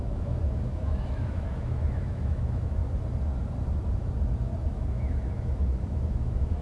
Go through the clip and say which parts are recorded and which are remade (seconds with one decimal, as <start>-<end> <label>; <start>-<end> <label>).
0.0-2.8 remade; 2.8-4.6 recorded; 4.6-6.6 remade